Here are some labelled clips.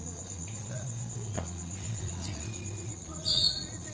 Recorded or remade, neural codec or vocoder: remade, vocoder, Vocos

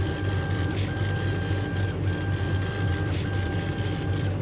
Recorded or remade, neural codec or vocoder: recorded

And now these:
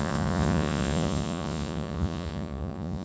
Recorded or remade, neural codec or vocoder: remade, vocoder, Vocos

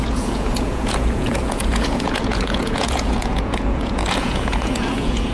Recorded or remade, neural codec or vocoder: remade, vocoder, Vocos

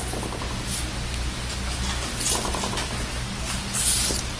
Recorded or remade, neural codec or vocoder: recorded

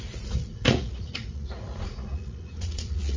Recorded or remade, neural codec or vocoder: remade, vocoder, Vocos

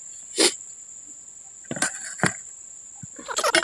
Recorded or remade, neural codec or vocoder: recorded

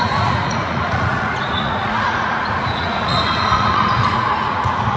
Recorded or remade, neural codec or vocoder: remade, vocoder, Vocos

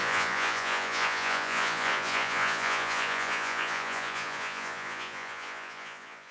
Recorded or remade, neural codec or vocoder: remade, vocoder, Vocos